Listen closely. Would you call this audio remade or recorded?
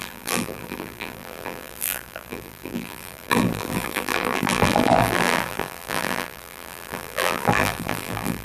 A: remade